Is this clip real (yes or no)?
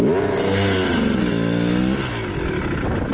yes